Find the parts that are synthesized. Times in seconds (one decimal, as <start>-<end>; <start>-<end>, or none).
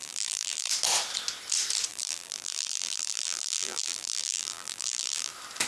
0.0-0.7; 1.9-5.3